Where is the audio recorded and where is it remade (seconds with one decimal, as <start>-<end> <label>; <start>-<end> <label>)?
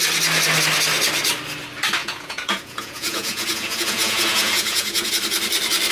0.0-2.0 recorded; 2.0-5.1 remade; 5.1-5.9 recorded